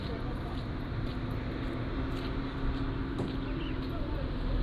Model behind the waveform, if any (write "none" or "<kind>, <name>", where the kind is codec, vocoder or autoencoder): none